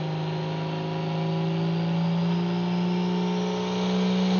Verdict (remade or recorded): recorded